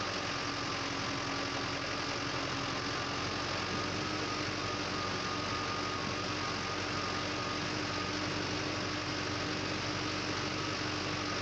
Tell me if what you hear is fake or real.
real